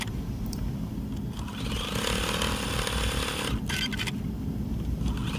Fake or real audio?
real